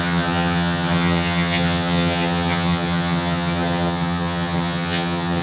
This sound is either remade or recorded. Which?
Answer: remade